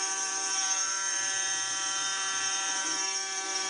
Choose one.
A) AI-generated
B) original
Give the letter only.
A